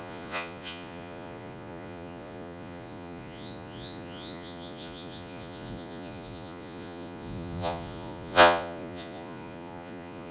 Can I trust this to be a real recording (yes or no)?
no